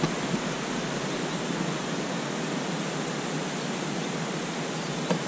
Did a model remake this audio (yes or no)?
no